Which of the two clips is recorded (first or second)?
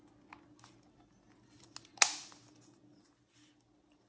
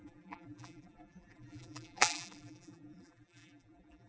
first